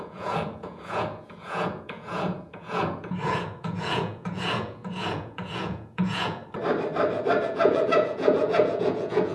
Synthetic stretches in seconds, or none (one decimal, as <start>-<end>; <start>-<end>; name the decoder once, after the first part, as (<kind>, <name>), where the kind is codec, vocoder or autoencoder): 0.0-6.4 (vocoder, Vocos); 7.4-9.3